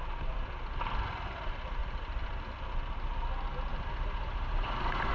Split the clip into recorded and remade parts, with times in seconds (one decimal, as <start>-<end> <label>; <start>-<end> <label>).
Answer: 0.0-1.8 recorded; 1.8-2.4 remade; 2.4-3.7 recorded; 3.7-5.1 remade

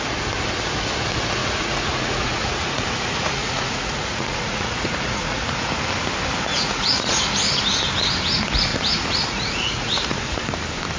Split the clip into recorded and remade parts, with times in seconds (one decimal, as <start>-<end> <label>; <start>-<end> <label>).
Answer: 0.0-1.4 recorded; 1.4-5.7 remade; 5.7-6.5 recorded; 6.5-7.2 remade; 7.2-8.7 recorded; 8.7-10.4 remade; 10.4-11.0 recorded

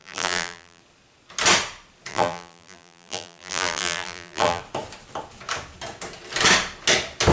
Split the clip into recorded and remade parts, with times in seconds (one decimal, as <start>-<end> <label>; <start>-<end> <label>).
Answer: 0.0-0.8 remade; 0.8-2.1 recorded; 2.1-4.6 remade; 4.6-7.3 recorded

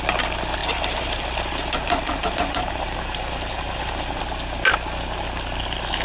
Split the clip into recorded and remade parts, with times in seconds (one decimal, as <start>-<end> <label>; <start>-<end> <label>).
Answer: 0.0-0.6 recorded; 0.6-4.2 remade; 4.2-6.0 recorded